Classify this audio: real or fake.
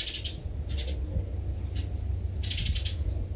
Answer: real